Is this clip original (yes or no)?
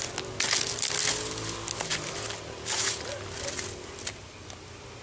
yes